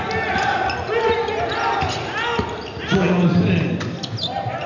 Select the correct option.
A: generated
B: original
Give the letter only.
B